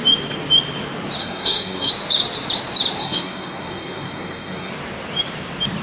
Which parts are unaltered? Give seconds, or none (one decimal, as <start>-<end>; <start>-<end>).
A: 0.0-1.2; 1.9-3.0; 4.7-5.8